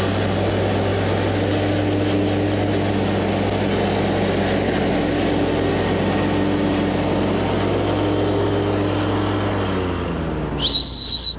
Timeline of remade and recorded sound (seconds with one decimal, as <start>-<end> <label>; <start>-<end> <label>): 0.0-11.4 recorded